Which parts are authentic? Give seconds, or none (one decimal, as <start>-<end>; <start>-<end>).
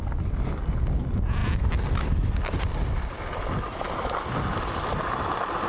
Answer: 0.0-1.4; 4.5-5.7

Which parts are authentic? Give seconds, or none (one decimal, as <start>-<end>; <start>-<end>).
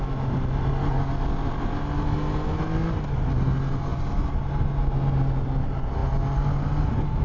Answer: 0.0-7.2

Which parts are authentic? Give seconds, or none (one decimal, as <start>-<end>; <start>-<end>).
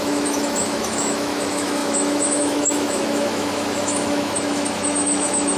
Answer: none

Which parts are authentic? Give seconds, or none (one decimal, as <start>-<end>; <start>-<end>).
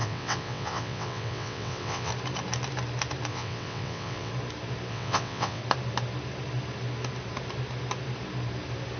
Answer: 2.1-3.3; 4.3-4.9; 5.6-9.0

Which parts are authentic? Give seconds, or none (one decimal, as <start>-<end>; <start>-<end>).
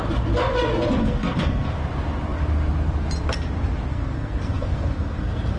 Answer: 0.0-1.0; 1.8-3.9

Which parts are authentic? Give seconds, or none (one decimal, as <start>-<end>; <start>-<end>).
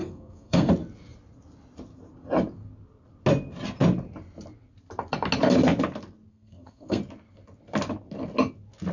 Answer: 0.7-6.3; 7.0-8.9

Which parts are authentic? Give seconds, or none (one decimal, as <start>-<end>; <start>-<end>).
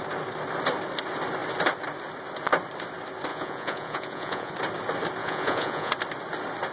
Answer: 0.0-3.3; 4.5-5.2; 5.9-6.7